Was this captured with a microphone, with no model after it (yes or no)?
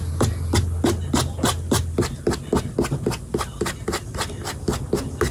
yes